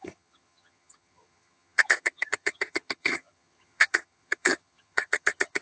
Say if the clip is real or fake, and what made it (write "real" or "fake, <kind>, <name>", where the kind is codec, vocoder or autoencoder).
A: fake, vocoder, HiFi-GAN